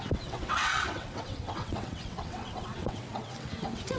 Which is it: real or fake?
fake